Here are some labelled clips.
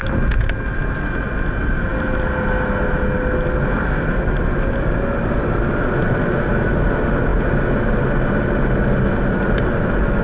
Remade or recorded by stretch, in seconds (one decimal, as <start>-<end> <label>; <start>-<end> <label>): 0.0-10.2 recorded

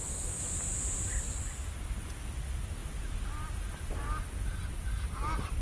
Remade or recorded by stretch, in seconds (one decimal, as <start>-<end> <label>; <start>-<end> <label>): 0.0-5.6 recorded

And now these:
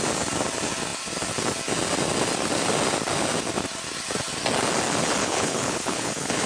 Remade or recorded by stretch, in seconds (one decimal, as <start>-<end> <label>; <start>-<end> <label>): 0.0-5.2 recorded; 5.2-6.5 remade